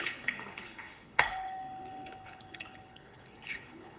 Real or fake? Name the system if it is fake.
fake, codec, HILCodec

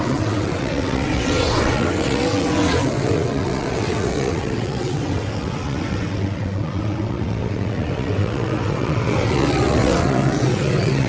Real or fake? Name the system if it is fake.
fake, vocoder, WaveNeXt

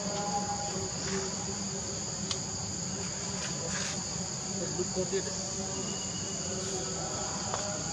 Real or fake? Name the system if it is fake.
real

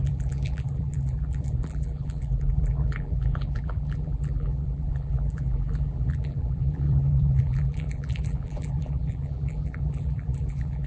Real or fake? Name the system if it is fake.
fake, vocoder, BigVGAN v2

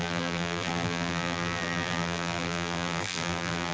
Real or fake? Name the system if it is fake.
fake, vocoder, BigVGAN v2